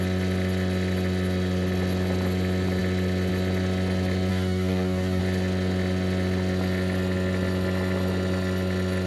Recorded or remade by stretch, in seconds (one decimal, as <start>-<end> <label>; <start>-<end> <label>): 0.0-4.3 recorded; 4.3-5.2 remade; 5.2-9.1 recorded